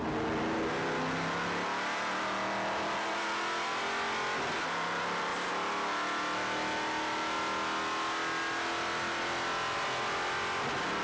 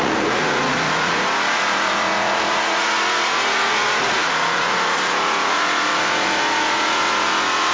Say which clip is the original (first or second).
first